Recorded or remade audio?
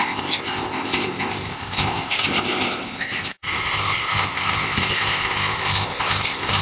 remade